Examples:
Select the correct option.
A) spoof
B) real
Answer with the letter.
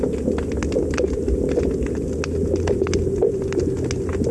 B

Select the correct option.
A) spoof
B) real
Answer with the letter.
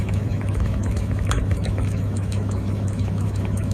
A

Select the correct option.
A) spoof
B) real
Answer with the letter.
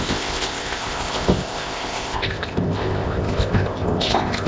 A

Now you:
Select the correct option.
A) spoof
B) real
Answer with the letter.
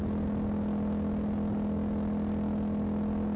B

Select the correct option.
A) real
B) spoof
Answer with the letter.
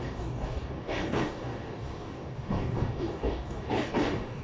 B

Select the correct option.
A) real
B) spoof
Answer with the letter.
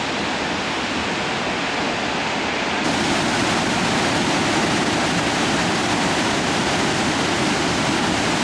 A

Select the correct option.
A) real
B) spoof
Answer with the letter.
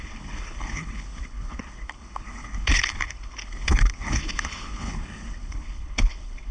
B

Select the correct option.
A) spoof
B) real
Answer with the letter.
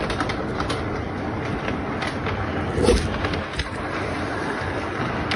B